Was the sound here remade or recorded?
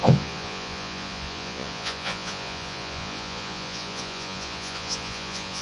remade